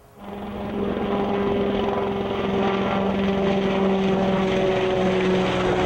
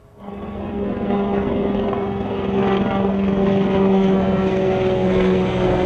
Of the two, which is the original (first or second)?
first